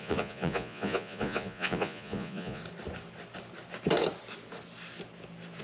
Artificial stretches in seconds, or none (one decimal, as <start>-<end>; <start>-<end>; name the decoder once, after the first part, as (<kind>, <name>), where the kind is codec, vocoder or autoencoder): 0.0-2.6 (vocoder, Vocos)